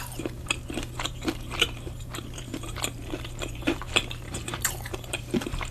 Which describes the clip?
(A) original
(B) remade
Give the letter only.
B